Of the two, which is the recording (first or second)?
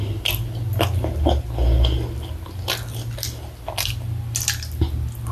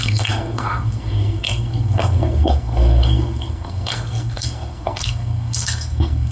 first